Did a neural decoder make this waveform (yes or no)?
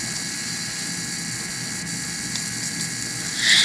no